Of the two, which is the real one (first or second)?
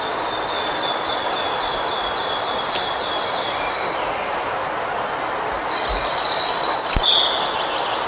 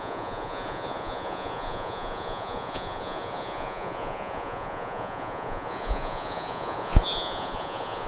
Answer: first